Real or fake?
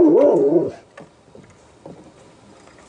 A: real